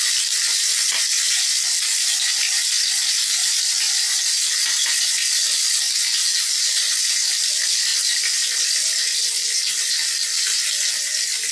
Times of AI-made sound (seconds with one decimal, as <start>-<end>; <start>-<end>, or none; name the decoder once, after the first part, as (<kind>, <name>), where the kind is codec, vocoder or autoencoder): none